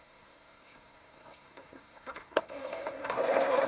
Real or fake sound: fake